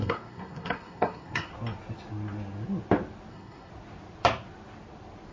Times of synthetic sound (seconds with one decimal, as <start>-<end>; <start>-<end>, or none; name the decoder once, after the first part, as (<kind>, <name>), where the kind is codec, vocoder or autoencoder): 0.0-1.5 (codec, SNAC); 3.3-3.7